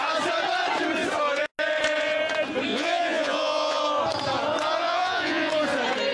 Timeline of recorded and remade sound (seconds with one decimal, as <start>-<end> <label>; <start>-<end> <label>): 0.0-2.7 recorded; 2.7-3.8 remade; 3.8-4.8 recorded; 4.8-5.5 remade; 5.5-6.1 recorded